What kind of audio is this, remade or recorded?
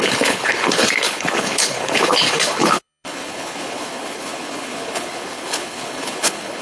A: remade